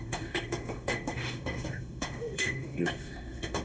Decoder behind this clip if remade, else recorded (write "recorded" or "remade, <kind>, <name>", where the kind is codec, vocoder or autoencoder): remade, autoencoder, DAC-VAE